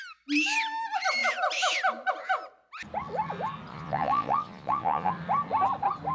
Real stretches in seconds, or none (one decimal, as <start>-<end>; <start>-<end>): 0.0-3.7; 5.1-6.1